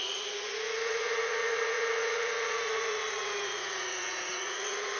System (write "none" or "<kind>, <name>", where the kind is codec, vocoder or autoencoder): vocoder, Vocos